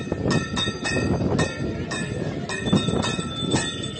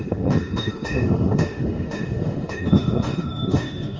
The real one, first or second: first